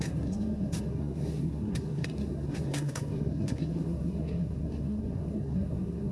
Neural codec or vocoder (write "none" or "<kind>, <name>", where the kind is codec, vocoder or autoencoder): codec, SNAC